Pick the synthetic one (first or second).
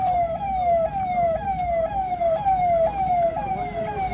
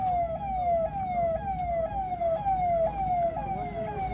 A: first